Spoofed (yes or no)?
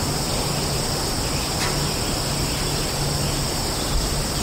yes